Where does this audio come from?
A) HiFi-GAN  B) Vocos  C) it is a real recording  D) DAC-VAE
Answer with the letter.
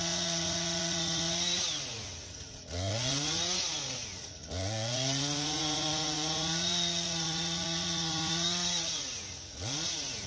B